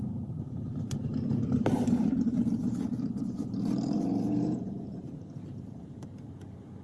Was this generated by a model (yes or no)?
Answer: yes